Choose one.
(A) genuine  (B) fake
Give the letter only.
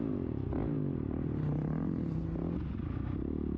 A